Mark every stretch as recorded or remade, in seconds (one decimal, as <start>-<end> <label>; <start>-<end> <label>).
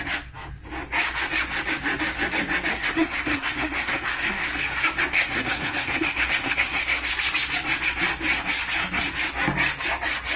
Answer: 0.0-2.7 recorded; 2.7-4.6 remade; 4.6-5.1 recorded; 5.1-7.1 remade; 7.1-10.4 recorded